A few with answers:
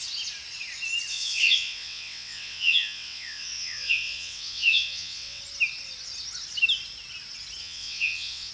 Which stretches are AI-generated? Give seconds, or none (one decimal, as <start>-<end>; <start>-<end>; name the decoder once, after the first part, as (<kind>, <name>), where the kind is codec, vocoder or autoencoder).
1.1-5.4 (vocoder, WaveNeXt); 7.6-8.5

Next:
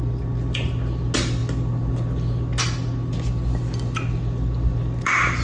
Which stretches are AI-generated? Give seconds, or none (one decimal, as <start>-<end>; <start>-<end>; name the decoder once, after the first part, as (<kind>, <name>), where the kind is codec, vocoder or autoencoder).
none

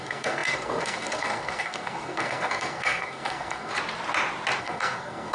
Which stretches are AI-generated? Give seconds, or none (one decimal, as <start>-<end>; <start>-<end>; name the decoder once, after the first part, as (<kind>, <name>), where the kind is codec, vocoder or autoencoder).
0.0-3.7 (codec, SNAC); 4.6-5.3

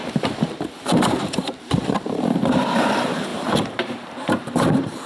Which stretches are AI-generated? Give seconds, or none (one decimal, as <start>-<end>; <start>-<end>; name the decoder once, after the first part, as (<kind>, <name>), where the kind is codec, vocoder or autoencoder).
0.0-5.1 (vocoder, BigVGAN v2)

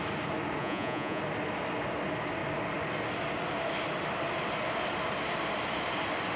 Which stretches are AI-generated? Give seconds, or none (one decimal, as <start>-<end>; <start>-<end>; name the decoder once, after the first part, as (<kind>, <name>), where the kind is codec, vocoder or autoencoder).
0.6-1.2 (vocoder, Vocos)

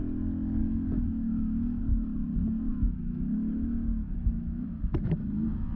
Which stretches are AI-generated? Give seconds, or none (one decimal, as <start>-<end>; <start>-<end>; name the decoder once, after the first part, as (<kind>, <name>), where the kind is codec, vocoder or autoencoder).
0.6-1.8 (autoencoder, DAC-VAE); 2.7-5.8

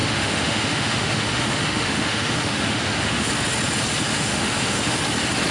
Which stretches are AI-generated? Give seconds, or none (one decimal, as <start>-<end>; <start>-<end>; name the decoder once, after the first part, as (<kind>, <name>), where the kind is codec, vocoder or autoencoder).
0.0-3.3 (autoencoder, DAC-VAE); 4.1-5.0